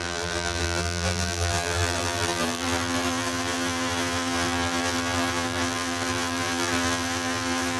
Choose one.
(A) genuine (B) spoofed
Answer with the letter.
B